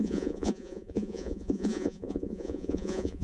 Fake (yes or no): yes